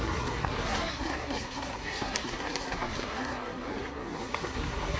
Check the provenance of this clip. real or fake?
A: fake